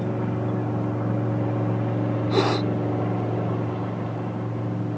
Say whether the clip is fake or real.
real